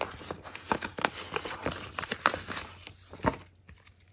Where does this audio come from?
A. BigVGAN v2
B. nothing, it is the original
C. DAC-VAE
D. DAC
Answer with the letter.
B